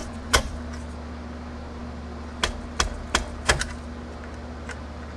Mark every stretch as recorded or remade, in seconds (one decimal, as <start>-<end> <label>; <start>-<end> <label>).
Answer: 0.0-0.5 remade; 0.5-5.2 recorded